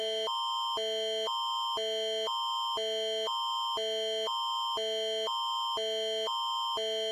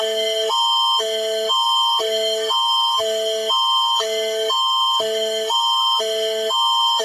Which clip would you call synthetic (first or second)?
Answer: second